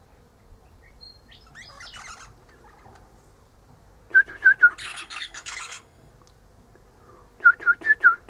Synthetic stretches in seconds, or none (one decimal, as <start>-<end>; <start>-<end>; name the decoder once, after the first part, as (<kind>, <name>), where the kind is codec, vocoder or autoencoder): 4.8-6.1 (codec, SNAC)